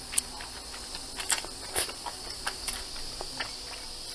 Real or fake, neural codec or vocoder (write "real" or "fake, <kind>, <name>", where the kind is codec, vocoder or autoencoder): real